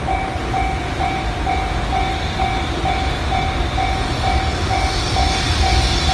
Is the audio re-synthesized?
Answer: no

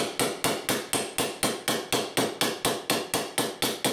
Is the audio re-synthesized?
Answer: no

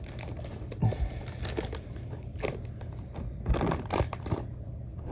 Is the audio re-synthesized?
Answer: no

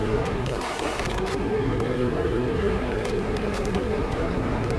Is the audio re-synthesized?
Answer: yes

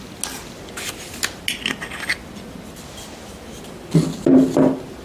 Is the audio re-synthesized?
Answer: no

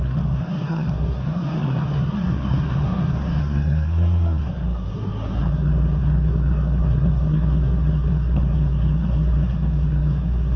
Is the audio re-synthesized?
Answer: yes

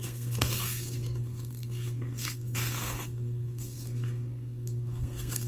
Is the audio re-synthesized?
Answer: yes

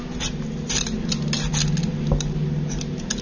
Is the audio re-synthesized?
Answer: no